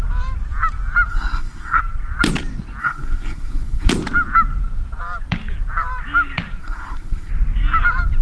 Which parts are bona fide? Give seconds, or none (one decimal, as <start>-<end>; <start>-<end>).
0.0-1.1; 1.8-2.8; 3.9-6.6; 7.3-8.2

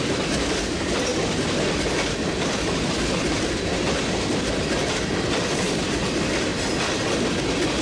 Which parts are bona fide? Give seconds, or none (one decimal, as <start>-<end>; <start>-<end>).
0.0-7.8

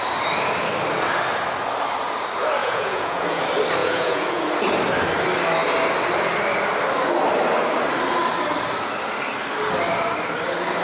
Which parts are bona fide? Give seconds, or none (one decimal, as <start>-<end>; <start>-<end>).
0.0-2.6; 3.4-3.8; 4.4-10.8

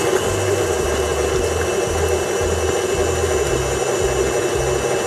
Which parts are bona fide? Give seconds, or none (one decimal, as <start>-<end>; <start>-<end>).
0.0-5.1

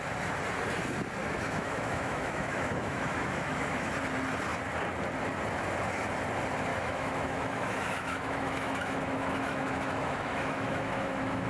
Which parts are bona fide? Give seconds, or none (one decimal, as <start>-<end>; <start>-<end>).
0.0-1.2; 3.9-6.7